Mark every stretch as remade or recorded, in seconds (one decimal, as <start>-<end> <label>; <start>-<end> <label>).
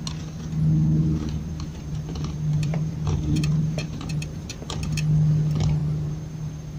0.0-1.0 recorded; 1.0-4.5 remade; 4.5-5.8 recorded; 5.8-6.8 remade